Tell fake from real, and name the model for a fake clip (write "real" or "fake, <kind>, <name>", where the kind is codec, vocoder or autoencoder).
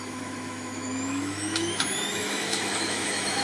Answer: fake, autoencoder, DAC-VAE